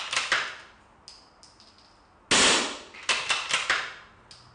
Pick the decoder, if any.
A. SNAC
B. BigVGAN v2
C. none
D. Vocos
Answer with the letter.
C